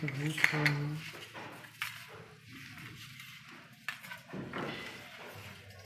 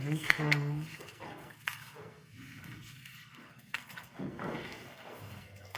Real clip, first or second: first